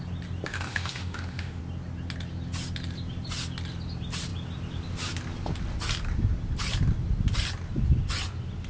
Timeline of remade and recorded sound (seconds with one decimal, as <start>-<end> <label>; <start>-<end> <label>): 0.0-0.5 recorded; 0.5-1.6 remade; 1.6-8.7 recorded